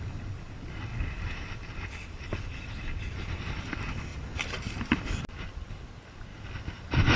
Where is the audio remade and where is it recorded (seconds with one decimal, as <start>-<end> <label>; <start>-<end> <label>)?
0.0-7.2 recorded